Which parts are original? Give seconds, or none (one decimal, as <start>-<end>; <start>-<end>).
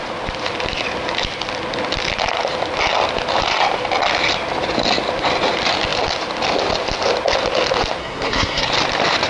0.0-8.0; 8.7-9.3